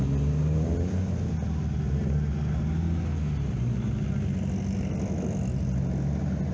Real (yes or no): yes